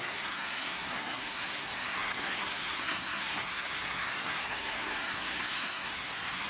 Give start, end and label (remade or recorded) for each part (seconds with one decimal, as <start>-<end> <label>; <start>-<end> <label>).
0.0-6.5 remade